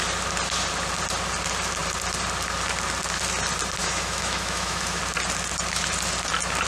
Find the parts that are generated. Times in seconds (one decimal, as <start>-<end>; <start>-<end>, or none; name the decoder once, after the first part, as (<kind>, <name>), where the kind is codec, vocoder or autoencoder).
3.8-5.0 (autoencoder, DAC-VAE)